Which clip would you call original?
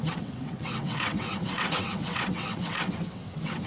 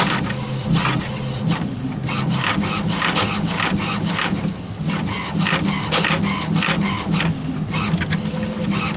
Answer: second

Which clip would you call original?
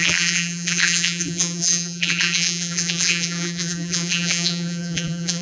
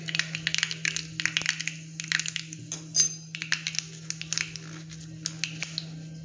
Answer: second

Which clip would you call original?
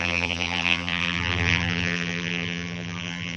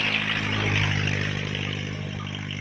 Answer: second